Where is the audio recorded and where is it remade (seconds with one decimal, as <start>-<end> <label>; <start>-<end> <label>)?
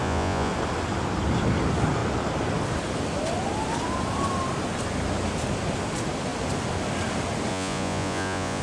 0.0-0.5 remade; 0.5-7.5 recorded; 7.5-8.6 remade